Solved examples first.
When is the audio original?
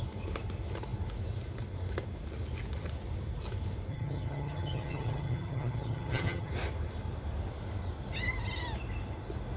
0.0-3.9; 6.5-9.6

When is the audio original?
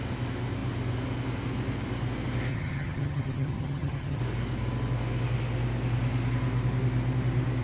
0.0-2.5; 4.2-7.6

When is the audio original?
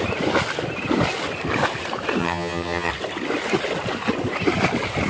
0.0-2.2; 2.9-5.1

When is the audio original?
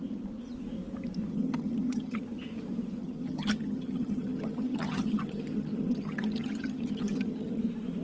0.0-1.3; 2.2-3.0; 7.6-8.0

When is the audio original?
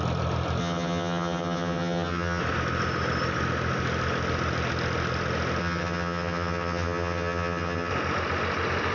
0.0-0.6; 2.4-5.6; 7.9-8.9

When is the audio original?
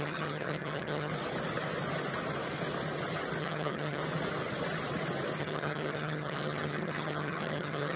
1.1-3.4; 4.0-5.4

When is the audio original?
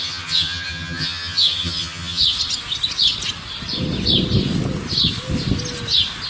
2.2-6.3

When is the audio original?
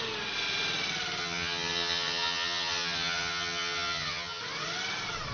0.0-1.2; 4.4-5.3